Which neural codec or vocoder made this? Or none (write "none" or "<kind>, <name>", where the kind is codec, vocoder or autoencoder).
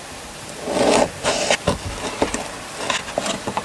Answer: none